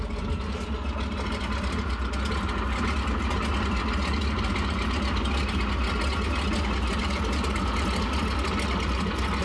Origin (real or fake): real